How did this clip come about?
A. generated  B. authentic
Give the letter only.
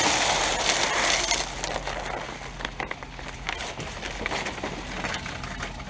B